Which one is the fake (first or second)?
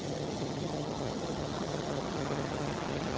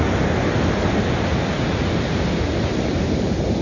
first